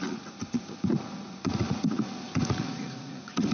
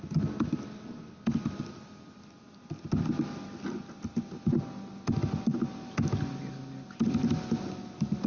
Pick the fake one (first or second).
first